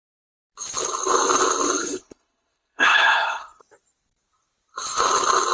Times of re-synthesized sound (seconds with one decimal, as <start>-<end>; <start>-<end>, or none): 1.8-3.6